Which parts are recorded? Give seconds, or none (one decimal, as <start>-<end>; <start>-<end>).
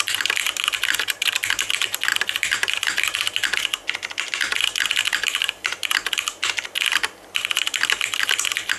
0.0-2.1; 3.1-5.0; 5.9-8.8